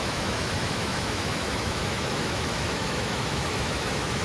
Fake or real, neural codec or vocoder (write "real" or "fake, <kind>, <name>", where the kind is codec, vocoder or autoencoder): fake, autoencoder, DAC-VAE